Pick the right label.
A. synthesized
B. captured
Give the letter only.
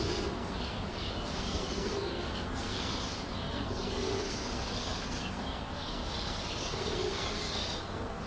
A